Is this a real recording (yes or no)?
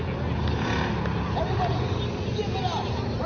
yes